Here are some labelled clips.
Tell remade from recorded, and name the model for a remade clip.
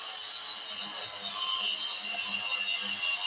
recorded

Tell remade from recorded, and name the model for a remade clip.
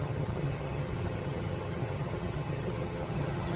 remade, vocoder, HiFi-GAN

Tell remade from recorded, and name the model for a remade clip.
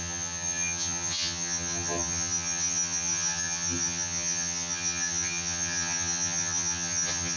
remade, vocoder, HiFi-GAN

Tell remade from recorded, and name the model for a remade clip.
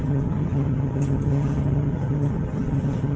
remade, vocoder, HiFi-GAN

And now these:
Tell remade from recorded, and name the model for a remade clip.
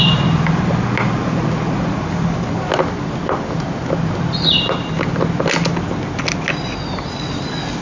recorded